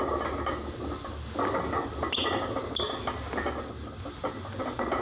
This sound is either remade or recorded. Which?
recorded